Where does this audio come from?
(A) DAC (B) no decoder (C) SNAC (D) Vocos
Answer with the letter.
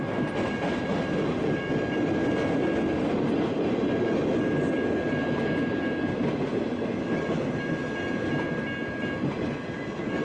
B